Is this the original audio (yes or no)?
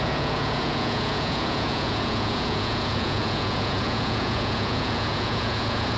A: no